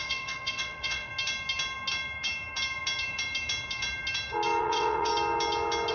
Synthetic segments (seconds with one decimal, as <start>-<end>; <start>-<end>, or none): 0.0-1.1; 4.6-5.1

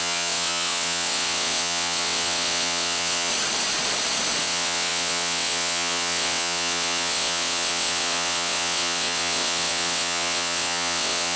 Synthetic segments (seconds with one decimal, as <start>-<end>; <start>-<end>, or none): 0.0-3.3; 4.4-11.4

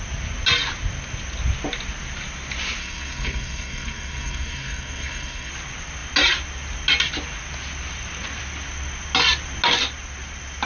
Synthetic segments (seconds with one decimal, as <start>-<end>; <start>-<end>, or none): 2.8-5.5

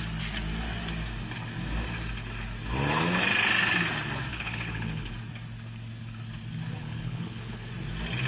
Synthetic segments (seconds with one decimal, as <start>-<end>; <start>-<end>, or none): 4.3-5.1; 6.8-7.7

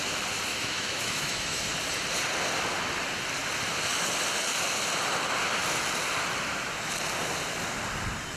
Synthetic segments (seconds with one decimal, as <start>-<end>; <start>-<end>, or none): 0.5-1.6

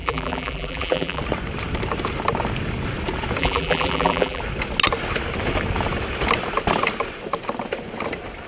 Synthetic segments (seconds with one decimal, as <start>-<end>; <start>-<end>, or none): 0.0-1.2; 3.4-4.4